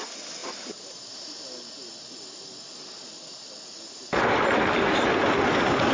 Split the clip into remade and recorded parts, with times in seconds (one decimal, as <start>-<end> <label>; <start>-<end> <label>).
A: 0.0-0.4 recorded; 0.4-1.0 remade; 1.0-5.9 recorded